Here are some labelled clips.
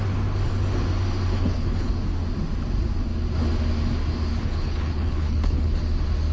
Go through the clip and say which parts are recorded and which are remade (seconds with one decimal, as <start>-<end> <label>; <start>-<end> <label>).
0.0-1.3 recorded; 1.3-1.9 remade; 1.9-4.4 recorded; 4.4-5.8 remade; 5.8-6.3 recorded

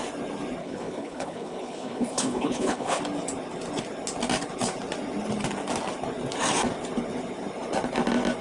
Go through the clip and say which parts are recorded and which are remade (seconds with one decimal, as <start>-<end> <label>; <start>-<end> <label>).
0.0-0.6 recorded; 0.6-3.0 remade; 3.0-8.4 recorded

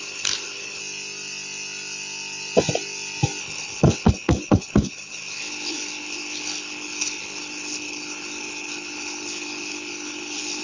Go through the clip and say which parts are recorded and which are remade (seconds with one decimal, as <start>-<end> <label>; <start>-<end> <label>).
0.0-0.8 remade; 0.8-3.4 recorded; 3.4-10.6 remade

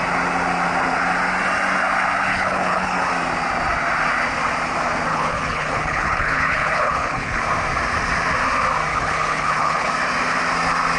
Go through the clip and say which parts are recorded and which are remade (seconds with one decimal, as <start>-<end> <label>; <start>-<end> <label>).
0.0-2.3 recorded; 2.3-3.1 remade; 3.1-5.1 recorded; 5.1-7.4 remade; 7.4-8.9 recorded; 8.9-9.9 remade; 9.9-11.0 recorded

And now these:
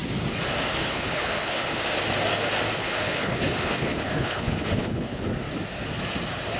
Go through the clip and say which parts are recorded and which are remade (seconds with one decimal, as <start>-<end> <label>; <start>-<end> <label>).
0.0-0.7 recorded; 0.7-1.8 remade; 1.8-2.8 recorded; 2.8-5.2 remade; 5.2-6.6 recorded

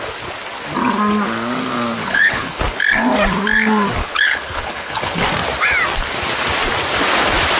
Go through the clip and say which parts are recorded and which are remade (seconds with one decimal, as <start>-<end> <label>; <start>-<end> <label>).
0.0-2.0 recorded; 2.0-2.6 remade; 2.6-4.0 recorded; 4.0-5.2 remade; 5.2-7.6 recorded

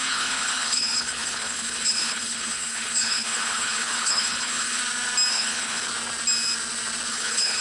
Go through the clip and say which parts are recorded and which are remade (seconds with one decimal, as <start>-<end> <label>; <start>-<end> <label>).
0.0-4.8 remade; 4.8-5.3 recorded; 5.3-5.9 remade; 5.9-7.1 recorded; 7.1-7.6 remade

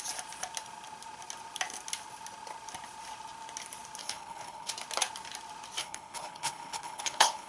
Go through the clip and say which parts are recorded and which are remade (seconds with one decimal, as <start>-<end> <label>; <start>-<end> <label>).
0.0-4.0 recorded; 4.0-4.7 remade; 4.7-5.8 recorded; 5.8-7.5 remade